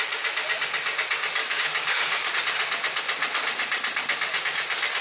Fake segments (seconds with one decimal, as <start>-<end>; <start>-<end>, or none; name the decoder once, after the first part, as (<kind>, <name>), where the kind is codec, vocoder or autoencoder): 1.4-2.3 (codec, DAC)